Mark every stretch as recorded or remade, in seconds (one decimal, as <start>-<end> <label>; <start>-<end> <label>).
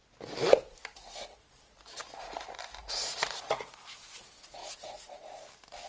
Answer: 0.0-2.8 recorded; 2.8-3.7 remade; 3.7-4.6 recorded; 4.6-5.5 remade; 5.5-5.9 recorded